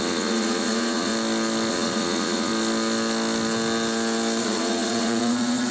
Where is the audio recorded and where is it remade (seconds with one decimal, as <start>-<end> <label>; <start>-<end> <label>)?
0.0-1.1 remade; 1.1-1.7 recorded; 1.7-2.5 remade; 2.5-4.4 recorded; 4.4-5.7 remade